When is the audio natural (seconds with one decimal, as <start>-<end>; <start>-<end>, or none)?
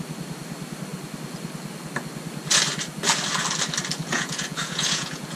0.0-4.0